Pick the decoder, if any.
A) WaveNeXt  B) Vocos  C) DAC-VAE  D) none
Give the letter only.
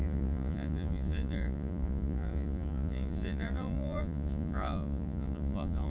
B